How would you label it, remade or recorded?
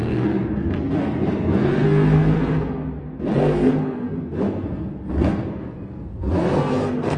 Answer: remade